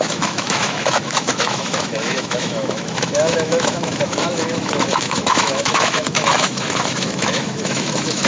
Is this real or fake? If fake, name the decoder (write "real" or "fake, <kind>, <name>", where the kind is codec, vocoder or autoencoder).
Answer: fake, autoencoder, DAC-VAE